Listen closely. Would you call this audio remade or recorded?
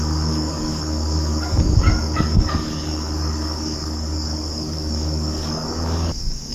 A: remade